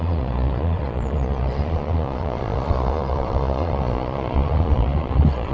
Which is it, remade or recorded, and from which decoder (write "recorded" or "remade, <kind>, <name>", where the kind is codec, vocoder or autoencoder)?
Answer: remade, vocoder, Vocos